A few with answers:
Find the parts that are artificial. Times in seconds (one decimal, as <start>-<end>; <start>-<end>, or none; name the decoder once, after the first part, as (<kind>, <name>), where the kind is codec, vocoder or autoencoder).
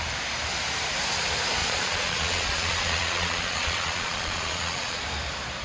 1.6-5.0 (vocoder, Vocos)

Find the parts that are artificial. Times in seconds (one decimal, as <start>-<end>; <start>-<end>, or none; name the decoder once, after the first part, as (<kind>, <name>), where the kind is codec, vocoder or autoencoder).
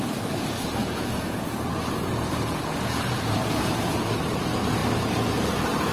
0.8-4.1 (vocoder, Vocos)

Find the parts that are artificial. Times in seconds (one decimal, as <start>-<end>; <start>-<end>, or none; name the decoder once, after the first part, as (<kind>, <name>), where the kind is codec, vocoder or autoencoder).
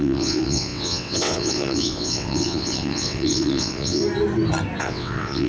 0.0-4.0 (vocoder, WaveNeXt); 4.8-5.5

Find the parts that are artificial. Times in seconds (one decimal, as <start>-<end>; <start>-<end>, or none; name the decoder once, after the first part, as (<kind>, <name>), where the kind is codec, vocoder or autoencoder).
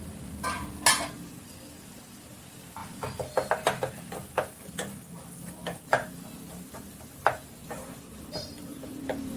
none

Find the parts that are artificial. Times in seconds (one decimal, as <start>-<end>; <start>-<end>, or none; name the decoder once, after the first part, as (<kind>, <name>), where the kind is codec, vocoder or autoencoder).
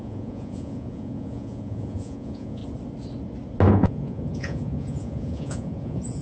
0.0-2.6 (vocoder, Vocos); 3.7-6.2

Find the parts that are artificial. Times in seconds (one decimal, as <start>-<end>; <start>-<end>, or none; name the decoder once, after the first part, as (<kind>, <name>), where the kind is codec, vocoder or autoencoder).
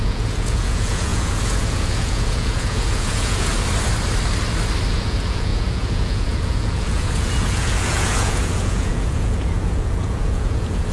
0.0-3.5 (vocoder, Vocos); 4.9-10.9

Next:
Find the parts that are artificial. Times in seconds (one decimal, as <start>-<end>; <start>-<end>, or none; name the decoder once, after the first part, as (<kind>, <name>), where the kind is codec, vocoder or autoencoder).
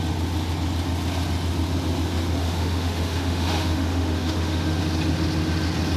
2.4-4.8 (autoencoder, DAC-VAE)